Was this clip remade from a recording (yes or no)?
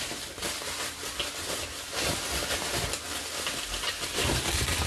no